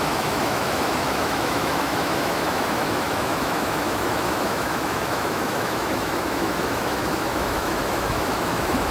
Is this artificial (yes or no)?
yes